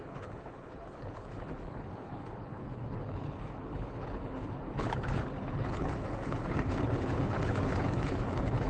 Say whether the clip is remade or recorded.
remade